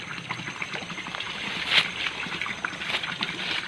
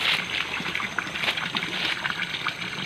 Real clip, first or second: second